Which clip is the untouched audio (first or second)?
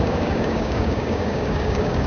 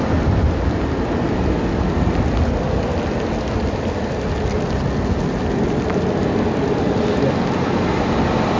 second